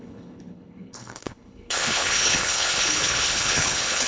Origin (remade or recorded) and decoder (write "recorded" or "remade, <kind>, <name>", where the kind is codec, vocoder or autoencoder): remade, codec, HILCodec